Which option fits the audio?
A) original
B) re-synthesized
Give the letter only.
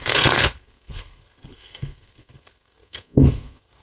B